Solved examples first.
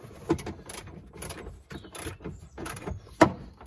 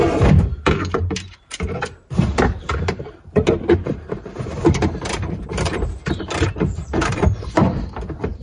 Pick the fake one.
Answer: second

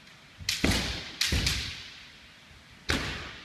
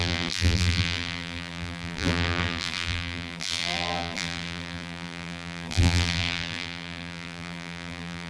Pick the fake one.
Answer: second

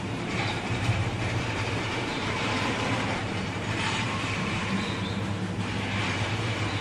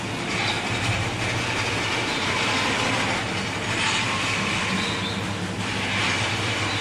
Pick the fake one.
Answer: first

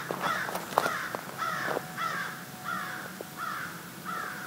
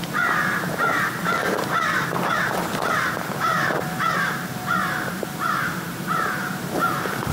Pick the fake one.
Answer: second